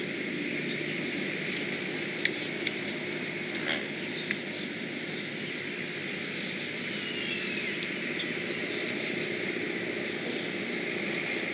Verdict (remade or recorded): recorded